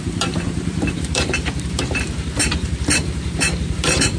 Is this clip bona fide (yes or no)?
no